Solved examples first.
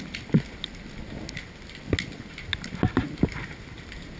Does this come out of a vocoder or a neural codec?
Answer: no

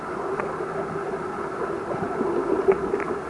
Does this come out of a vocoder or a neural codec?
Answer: no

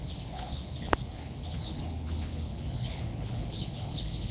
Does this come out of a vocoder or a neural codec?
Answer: yes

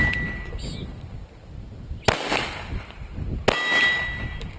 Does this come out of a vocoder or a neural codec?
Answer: no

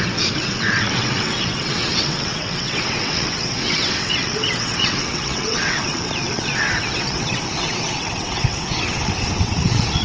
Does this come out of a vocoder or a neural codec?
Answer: yes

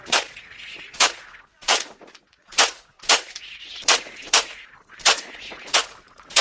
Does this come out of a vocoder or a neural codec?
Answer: yes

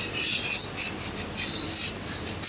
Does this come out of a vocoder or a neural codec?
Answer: no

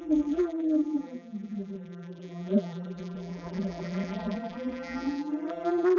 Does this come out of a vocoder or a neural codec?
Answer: yes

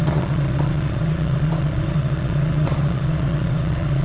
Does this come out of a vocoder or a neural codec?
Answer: yes